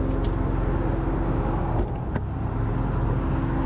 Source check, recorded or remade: recorded